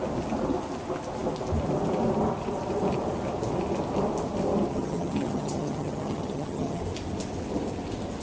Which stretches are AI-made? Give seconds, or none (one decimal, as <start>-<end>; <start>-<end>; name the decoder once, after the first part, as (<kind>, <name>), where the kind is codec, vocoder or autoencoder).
4.7-6.8 (vocoder, HiFi-GAN)